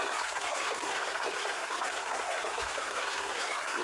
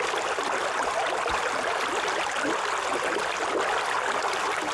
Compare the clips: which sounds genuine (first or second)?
second